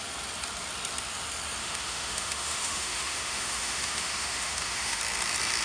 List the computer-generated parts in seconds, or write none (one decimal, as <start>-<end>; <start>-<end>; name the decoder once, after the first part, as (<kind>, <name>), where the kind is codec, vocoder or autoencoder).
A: 1.6-5.0 (autoencoder, DAC-VAE)